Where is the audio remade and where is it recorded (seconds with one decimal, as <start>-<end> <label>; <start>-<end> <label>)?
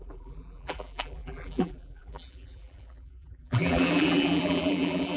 0.0-5.2 remade